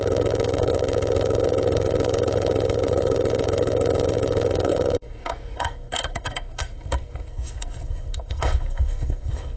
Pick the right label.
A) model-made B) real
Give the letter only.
A